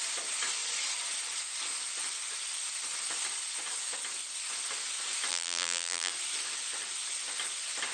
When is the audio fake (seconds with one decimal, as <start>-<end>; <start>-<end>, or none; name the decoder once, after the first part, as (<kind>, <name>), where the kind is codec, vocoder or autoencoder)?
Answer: 5.3-6.1 (vocoder, BigVGAN v2)